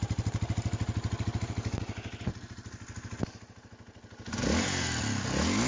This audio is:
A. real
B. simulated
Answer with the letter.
A